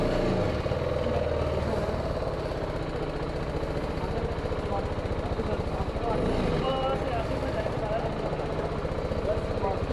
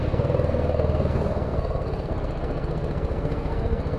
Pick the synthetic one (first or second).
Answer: second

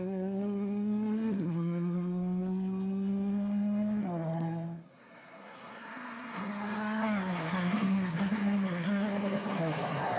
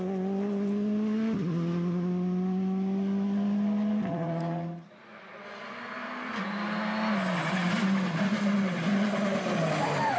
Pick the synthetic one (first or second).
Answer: first